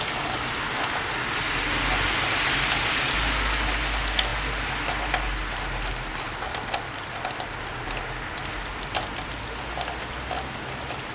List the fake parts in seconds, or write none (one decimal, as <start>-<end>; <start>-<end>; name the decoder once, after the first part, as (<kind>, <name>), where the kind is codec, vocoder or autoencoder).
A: none